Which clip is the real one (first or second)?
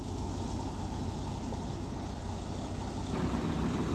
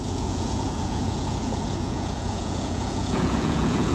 first